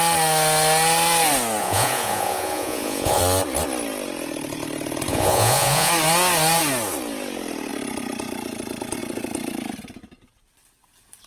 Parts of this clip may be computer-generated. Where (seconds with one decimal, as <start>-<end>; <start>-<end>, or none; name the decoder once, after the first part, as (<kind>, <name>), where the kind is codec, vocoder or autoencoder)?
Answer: 1.6-3.2 (vocoder, Vocos); 5.1-5.9